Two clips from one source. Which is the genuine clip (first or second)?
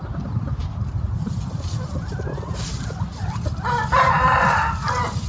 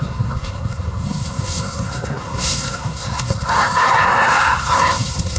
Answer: first